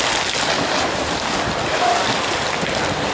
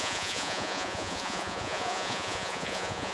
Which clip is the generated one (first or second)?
second